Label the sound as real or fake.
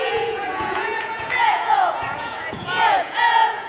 fake